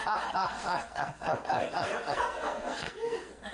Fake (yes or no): yes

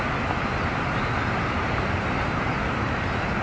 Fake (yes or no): no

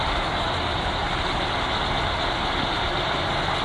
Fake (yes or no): no